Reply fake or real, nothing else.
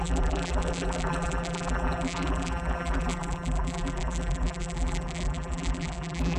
fake